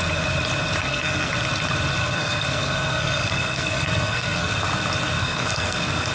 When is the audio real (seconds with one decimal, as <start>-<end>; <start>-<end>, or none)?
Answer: 0.0-0.8; 1.3-2.0; 4.5-5.2